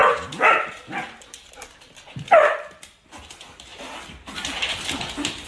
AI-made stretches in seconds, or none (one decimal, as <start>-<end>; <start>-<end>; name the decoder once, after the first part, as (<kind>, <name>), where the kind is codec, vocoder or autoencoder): 3.7-5.0 (vocoder, BigVGAN v2)